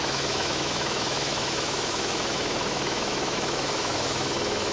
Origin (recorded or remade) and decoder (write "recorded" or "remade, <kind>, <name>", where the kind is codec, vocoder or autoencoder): remade, autoencoder, DAC-VAE